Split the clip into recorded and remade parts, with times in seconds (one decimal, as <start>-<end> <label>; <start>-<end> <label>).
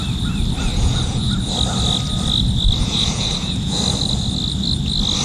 0.0-0.7 recorded; 0.7-1.3 remade; 1.3-2.8 recorded; 2.8-3.8 remade; 3.8-5.2 recorded